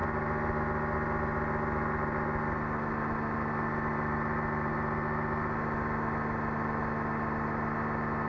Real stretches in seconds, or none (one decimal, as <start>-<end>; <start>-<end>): 0.0-8.3